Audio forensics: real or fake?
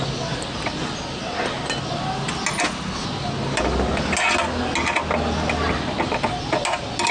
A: real